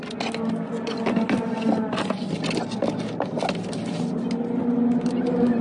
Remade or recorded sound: recorded